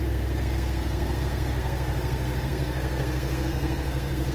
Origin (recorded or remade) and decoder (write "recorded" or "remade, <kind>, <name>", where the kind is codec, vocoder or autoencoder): remade, codec, SNAC